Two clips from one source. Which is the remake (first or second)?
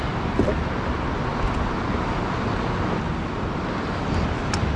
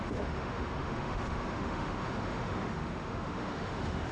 second